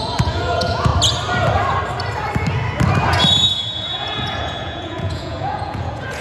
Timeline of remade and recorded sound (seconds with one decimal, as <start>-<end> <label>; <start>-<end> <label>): 0.0-0.9 remade; 0.9-3.5 recorded; 3.5-6.2 remade